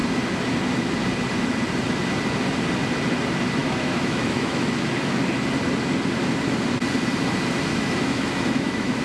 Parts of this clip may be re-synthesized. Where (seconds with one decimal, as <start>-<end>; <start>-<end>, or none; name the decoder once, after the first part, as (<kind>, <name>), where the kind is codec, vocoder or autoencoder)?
3.6-5.2 (autoencoder, DAC-VAE); 7.7-9.0